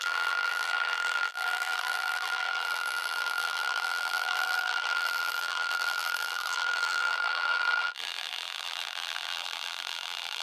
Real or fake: fake